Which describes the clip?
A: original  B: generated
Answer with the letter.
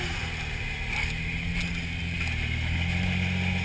A